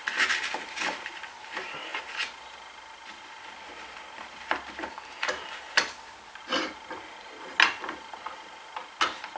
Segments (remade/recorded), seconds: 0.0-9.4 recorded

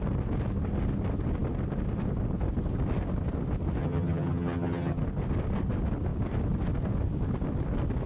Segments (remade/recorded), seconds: 0.0-3.8 recorded; 3.8-5.0 remade; 5.0-8.1 recorded

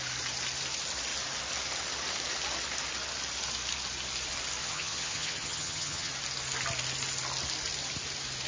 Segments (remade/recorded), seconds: 0.0-4.6 recorded; 4.6-6.1 remade; 6.1-8.5 recorded

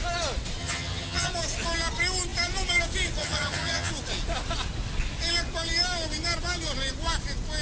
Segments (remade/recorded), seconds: 0.0-0.6 recorded; 0.6-1.3 remade; 1.3-3.2 recorded; 3.2-3.9 remade; 3.9-7.6 recorded

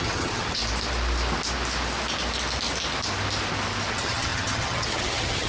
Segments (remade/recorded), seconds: 0.0-0.6 remade; 0.6-3.9 recorded; 3.9-5.5 remade

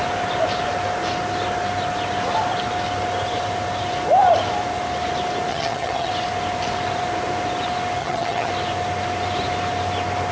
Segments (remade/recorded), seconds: 0.0-5.5 recorded; 5.5-6.1 remade; 6.1-8.0 recorded; 8.0-8.5 remade; 8.5-10.3 recorded

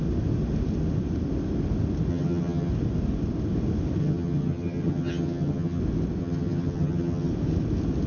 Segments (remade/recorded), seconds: 0.0-2.1 recorded; 2.1-2.7 remade; 2.7-4.0 recorded; 4.0-5.8 remade; 5.8-6.2 recorded; 6.2-7.3 remade; 7.3-8.1 recorded

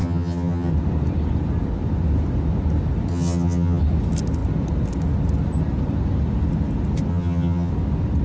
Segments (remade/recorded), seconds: 0.0-0.7 remade; 0.7-3.1 recorded; 3.1-3.8 remade; 3.8-7.1 recorded; 7.1-7.7 remade; 7.7-8.2 recorded